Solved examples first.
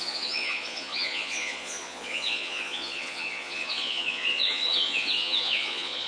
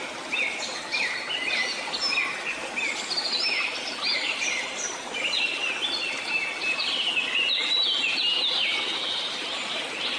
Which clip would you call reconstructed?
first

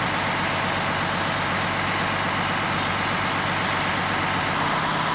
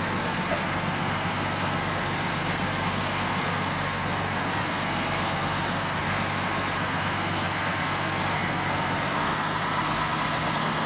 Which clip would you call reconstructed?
second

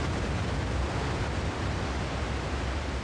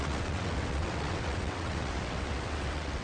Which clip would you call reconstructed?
second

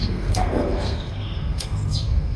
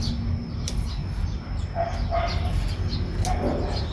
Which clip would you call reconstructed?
first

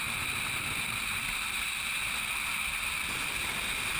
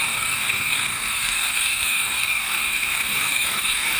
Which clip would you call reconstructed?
second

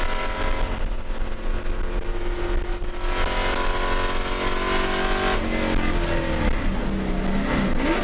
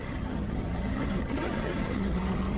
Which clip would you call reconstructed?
second